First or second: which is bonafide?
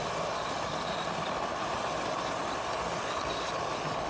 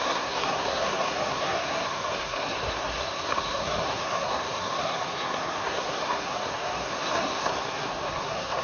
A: first